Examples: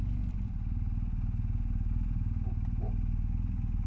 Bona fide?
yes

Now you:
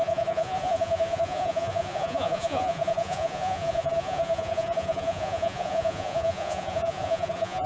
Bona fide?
no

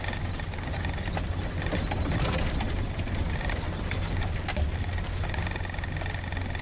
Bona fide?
yes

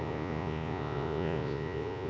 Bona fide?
no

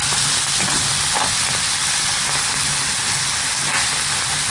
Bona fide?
yes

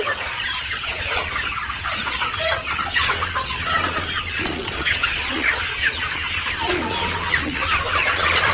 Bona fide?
no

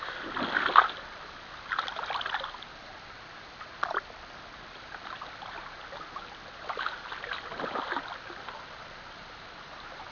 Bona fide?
yes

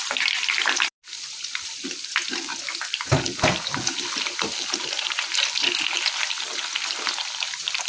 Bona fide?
yes